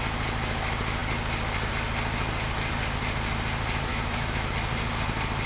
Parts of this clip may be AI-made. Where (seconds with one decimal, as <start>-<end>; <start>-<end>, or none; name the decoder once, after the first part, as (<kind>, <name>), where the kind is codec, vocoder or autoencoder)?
3.9-4.5 (autoencoder, DAC-VAE)